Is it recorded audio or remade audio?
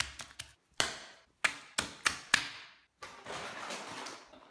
recorded